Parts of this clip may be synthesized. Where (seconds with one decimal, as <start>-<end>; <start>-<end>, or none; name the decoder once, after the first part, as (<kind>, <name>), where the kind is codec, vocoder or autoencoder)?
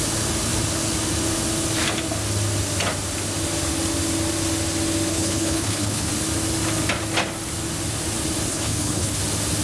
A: 5.1-6.1 (codec, HILCodec); 8.5-9.2